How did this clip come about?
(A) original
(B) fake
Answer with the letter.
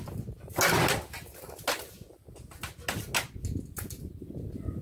A